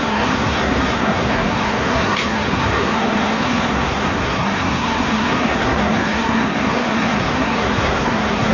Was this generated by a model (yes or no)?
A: yes